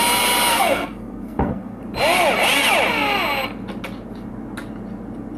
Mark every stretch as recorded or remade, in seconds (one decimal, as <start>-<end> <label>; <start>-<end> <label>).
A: 0.0-0.5 recorded; 0.5-1.8 remade; 1.8-5.4 recorded